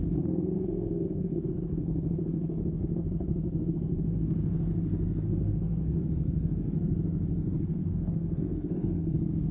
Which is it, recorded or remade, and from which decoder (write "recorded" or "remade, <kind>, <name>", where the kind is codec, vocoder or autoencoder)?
remade, codec, SNAC